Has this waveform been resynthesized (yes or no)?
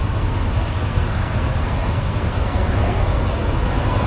yes